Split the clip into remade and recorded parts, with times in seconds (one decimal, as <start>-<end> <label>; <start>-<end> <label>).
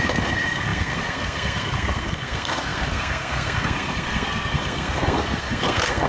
0.0-6.1 remade